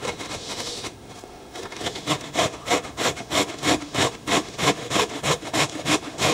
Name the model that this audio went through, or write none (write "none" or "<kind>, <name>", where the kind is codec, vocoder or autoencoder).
autoencoder, DAC-VAE